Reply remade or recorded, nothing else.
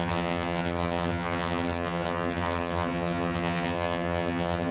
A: remade